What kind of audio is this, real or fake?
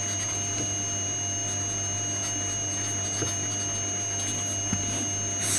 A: real